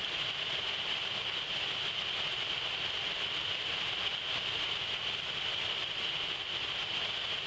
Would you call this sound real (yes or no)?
yes